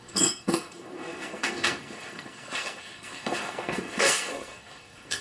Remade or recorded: remade